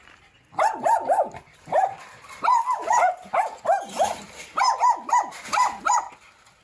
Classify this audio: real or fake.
real